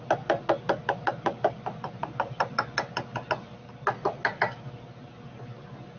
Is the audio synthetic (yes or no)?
no